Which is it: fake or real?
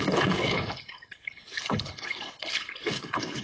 fake